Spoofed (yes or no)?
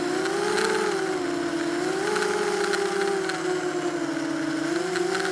no